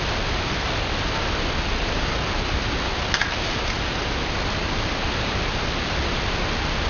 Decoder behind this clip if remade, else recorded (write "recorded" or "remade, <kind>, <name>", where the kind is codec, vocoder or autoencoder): recorded